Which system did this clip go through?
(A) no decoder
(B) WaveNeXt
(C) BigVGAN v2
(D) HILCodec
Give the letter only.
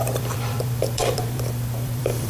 C